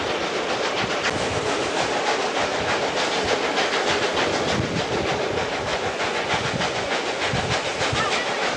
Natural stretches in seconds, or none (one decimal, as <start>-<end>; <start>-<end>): 0.0-5.7; 7.3-8.6